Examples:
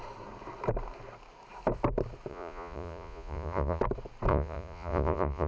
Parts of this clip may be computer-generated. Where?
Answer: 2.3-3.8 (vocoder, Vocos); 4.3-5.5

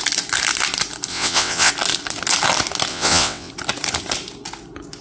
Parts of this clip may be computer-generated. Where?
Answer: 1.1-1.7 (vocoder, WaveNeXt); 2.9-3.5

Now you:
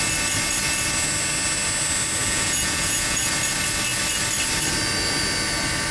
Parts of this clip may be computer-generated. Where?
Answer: 2.2-3.3 (vocoder, Vocos)